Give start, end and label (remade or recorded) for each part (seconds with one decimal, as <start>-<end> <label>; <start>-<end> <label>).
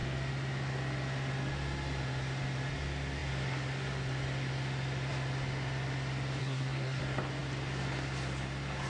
0.0-6.4 recorded; 6.4-7.0 remade; 7.0-8.9 recorded